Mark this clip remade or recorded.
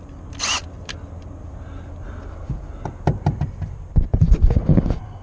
recorded